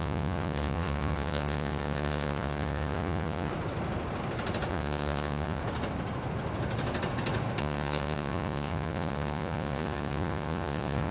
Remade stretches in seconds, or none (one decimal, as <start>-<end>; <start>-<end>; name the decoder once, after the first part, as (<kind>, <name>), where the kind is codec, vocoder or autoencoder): 0.0-3.5 (vocoder, Vocos); 4.7-5.6; 7.6-11.1